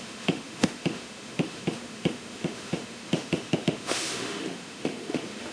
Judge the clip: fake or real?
fake